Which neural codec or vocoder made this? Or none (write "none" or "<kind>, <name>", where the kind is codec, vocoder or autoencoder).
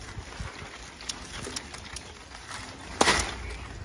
none